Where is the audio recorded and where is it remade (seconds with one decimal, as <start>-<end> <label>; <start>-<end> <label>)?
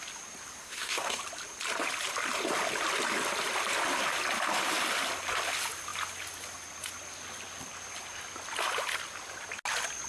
0.0-0.6 recorded; 0.6-1.2 remade; 1.2-10.1 recorded